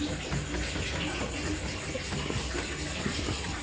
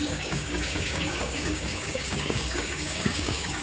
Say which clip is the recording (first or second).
first